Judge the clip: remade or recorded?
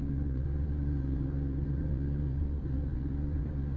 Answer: remade